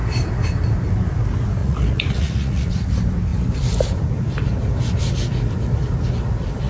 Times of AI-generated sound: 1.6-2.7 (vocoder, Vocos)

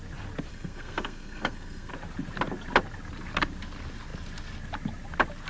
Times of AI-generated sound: 0.5-1.9 (codec, SNAC)